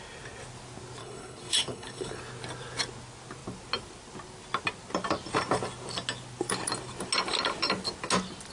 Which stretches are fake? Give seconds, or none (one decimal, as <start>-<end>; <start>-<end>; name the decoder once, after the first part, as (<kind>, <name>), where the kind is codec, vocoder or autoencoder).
1.0-2.2 (codec, HILCodec)